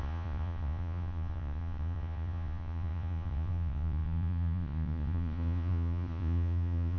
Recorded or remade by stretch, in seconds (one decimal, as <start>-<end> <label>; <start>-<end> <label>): 0.0-7.0 remade